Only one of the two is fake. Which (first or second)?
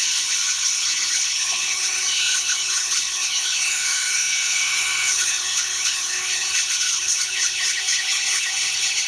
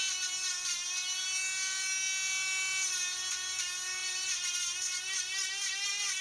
first